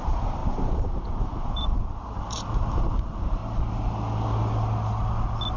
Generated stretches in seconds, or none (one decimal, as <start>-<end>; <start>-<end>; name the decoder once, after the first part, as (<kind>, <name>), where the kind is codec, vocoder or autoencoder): 0.0-3.4 (vocoder, BigVGAN v2)